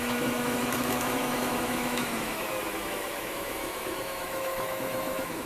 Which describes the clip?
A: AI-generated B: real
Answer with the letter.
A